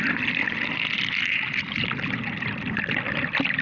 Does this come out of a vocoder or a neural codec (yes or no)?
no